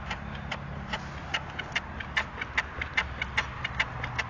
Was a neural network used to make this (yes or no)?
no